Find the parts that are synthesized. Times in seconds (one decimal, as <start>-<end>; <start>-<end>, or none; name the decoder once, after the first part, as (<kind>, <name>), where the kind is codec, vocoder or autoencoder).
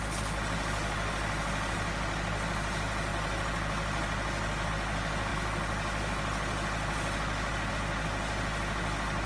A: none